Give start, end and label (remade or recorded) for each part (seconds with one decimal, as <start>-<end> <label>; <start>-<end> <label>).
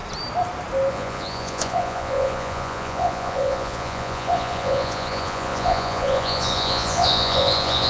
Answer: 0.0-0.9 recorded; 0.9-7.9 remade